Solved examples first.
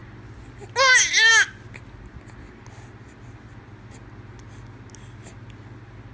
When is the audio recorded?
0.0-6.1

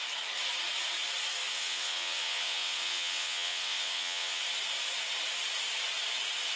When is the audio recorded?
0.0-1.5; 4.4-6.6

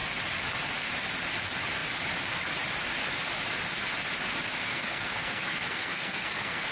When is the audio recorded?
0.0-4.6

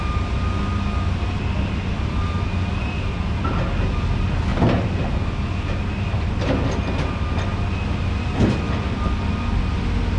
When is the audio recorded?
0.0-10.2

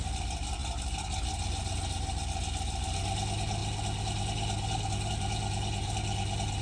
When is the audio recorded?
0.0-6.6